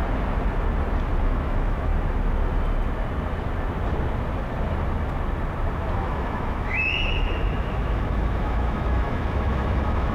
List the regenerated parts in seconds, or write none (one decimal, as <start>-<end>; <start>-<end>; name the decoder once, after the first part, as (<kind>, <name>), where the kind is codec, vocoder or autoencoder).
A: 1.2-1.9 (autoencoder, DAC-VAE); 5.9-10.1